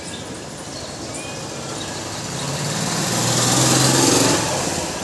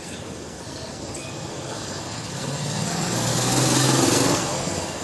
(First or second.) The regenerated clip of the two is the second